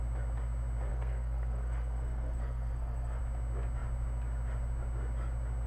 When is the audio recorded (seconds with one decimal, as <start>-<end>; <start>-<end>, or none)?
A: 0.0-0.9; 3.2-5.7